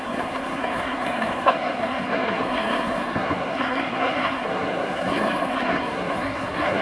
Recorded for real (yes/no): no